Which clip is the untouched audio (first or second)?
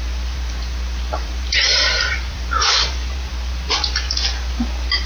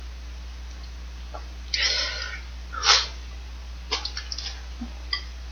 second